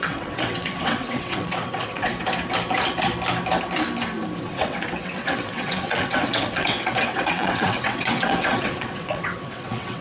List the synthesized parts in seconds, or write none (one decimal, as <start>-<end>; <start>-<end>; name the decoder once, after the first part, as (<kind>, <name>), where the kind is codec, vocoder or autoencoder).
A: 0.0-2.2 (vocoder, WaveNeXt); 4.4-10.0